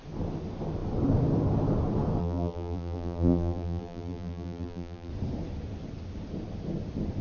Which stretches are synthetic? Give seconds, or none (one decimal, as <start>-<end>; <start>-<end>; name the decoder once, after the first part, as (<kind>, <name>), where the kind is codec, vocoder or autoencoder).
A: 2.2-5.1 (vocoder, BigVGAN v2)